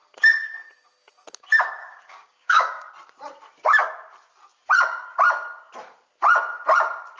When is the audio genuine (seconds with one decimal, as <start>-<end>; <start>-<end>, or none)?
0.0-1.8; 2.9-7.2